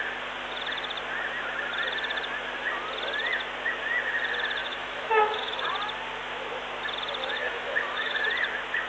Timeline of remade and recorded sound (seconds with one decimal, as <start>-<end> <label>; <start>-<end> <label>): 0.0-4.6 recorded; 4.6-5.7 remade; 5.7-7.2 recorded; 7.2-8.2 remade; 8.2-8.9 recorded